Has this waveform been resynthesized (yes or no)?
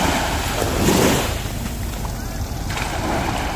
no